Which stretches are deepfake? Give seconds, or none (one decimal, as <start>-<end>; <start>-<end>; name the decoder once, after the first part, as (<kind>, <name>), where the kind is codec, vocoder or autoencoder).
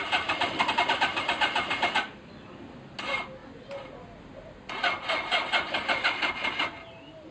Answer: none